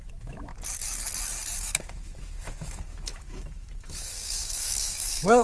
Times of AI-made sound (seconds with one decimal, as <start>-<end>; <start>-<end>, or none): 0.0-0.5; 1.6-5.4